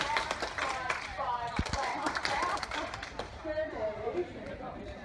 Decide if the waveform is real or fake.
fake